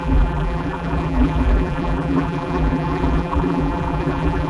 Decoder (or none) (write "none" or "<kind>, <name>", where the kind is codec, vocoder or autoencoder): vocoder, BigVGAN v2